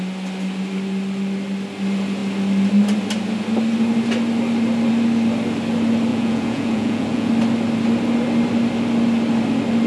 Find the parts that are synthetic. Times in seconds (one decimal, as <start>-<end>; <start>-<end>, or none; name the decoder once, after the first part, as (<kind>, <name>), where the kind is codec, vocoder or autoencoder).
6.1-7.3 (vocoder, Vocos)